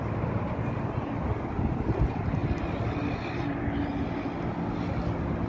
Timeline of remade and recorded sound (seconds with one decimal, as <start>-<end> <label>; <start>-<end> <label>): 0.0-5.5 recorded